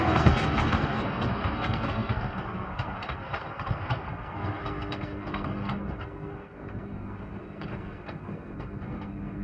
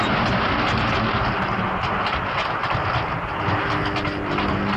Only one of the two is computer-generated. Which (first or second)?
first